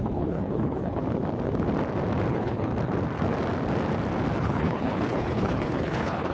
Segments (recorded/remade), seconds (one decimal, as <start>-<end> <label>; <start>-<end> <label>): 0.0-1.0 remade; 1.0-2.3 recorded; 2.3-2.7 remade; 2.7-4.4 recorded; 4.4-6.3 remade